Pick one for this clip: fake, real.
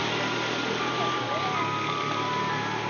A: real